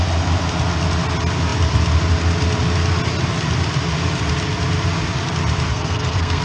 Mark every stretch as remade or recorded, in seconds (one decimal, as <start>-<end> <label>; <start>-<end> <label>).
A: 0.0-5.7 recorded; 5.7-6.4 remade